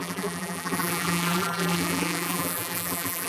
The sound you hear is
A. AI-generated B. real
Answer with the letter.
A